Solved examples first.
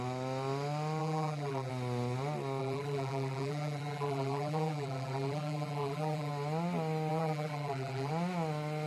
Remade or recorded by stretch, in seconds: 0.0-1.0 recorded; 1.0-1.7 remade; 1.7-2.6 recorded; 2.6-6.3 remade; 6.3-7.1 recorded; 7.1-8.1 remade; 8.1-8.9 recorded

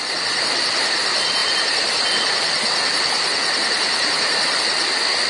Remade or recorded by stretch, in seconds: 0.0-1.4 recorded; 1.4-4.6 remade; 4.6-5.3 recorded

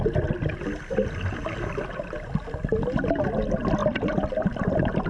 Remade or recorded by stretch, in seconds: 0.0-3.8 recorded; 3.8-5.1 remade

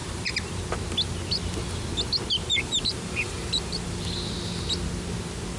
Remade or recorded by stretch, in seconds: 0.0-0.6 remade; 0.6-2.4 recorded; 2.4-4.0 remade; 4.0-5.6 recorded

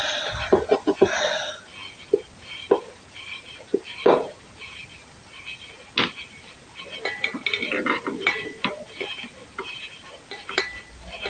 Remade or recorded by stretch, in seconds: 0.0-2.8 recorded; 2.8-5.2 remade; 5.2-9.4 recorded; 9.4-10.6 remade; 10.6-11.3 recorded

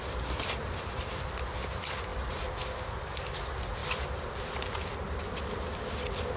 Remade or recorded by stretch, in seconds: 0.0-3.8 recorded; 3.8-4.8 remade; 4.8-6.4 recorded